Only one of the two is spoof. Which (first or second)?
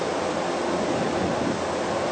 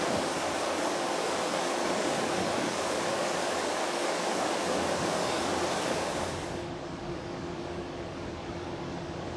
second